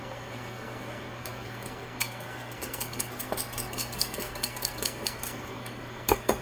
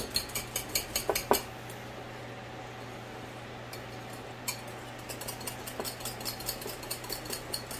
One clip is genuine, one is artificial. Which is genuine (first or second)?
second